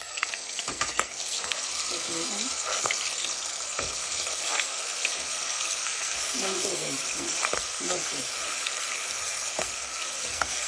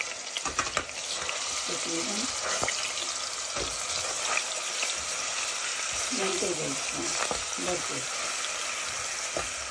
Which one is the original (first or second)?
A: second